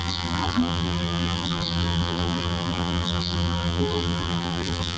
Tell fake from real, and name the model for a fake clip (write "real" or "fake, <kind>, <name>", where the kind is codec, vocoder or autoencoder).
fake, vocoder, BigVGAN v2